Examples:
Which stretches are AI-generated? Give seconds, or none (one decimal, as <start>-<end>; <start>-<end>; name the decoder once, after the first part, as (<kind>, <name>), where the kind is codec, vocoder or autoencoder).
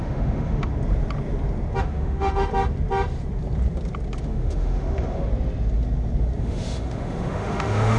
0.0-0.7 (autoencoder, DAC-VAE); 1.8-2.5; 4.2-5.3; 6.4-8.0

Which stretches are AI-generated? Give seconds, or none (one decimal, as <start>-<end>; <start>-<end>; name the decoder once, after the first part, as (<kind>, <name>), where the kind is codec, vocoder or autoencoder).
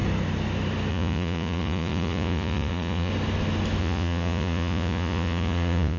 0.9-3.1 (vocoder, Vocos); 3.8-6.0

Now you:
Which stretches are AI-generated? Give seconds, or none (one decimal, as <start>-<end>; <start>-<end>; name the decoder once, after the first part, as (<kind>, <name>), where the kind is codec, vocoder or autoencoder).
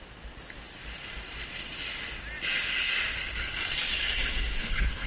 4.6-5.1 (codec, HILCodec)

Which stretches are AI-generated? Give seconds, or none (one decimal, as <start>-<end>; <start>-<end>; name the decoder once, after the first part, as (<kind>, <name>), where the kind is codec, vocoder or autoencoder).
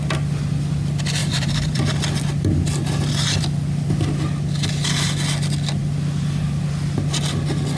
1.2-1.8 (vocoder, BigVGAN v2)